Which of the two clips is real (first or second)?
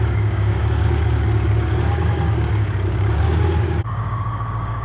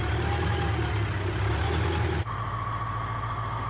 second